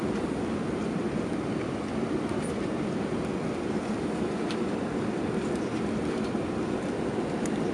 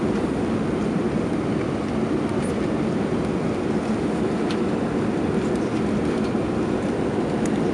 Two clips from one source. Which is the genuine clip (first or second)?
second